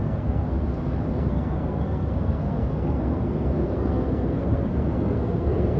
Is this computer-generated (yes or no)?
yes